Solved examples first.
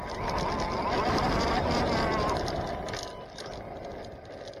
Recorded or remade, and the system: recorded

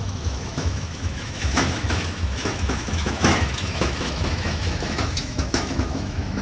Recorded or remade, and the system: remade, autoencoder, DAC-VAE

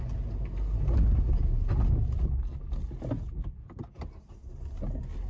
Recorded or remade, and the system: recorded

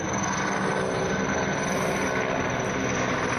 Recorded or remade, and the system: recorded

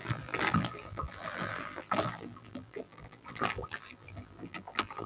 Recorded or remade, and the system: remade, vocoder, BigVGAN v2